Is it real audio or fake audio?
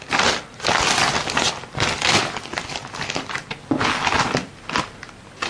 real